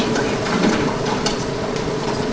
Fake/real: fake